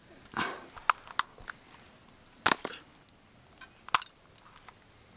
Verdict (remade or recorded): recorded